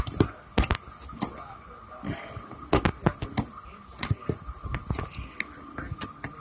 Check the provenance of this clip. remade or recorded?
recorded